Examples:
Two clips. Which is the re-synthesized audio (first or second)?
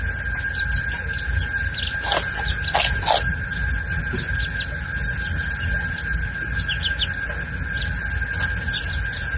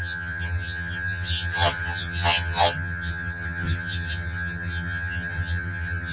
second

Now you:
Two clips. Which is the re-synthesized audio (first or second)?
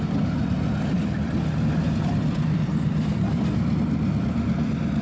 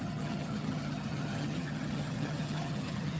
second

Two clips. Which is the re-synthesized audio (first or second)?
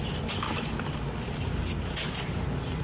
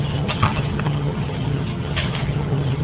second